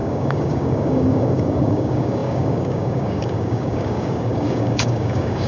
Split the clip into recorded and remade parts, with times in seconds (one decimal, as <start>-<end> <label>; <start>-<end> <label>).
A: 0.0-5.5 remade